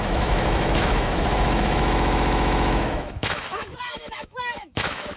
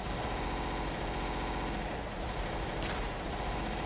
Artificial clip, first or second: first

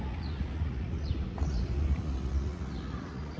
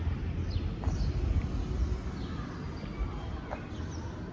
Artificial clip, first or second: first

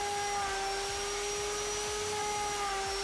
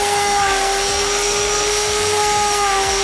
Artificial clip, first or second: second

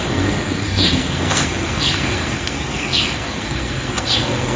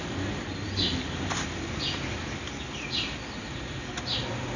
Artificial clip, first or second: first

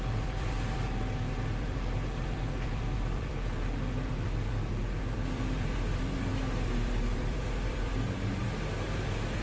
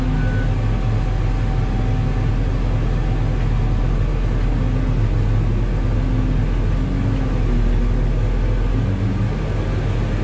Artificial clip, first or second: first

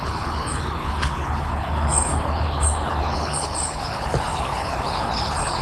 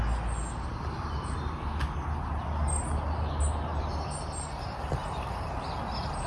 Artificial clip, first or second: first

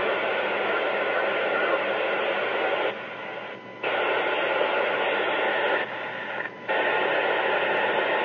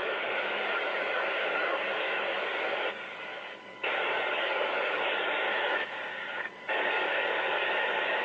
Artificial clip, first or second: second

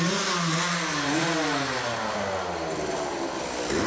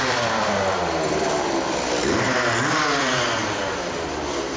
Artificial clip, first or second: second